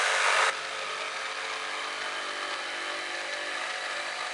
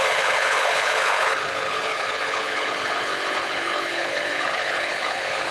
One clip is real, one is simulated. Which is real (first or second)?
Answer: first